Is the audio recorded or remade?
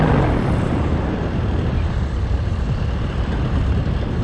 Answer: recorded